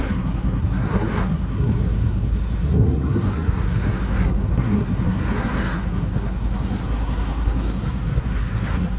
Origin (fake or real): fake